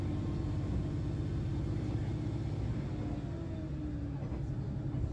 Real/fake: real